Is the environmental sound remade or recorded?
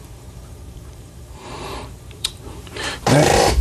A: remade